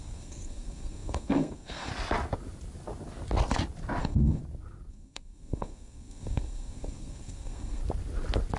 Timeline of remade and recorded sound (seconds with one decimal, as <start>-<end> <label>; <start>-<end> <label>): 0.0-1.9 remade; 1.9-4.0 recorded; 4.0-4.4 remade; 4.4-4.9 recorded; 4.9-7.8 remade; 7.8-8.6 recorded